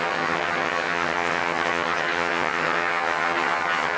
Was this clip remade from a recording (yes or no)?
yes